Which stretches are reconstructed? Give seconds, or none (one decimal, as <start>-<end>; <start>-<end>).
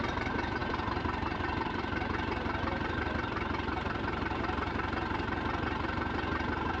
0.6-4.7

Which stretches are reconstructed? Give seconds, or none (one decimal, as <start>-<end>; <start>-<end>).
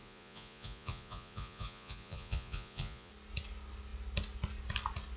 0.0-3.1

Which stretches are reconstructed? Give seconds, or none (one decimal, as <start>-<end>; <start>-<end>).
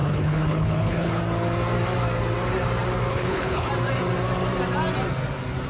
0.0-1.2; 3.1-3.7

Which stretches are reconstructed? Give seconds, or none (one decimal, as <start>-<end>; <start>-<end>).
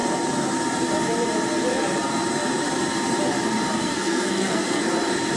3.8-4.9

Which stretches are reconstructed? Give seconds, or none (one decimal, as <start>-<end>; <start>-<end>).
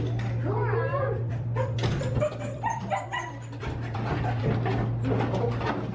0.9-4.4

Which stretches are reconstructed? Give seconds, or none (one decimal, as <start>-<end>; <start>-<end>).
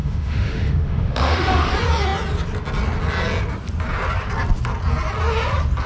0.0-1.7